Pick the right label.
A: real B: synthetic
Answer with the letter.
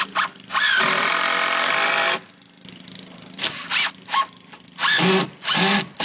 A